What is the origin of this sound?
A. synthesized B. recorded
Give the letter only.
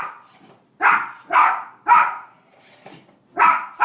B